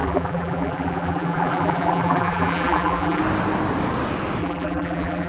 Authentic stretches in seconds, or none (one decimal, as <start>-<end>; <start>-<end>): 3.2-4.4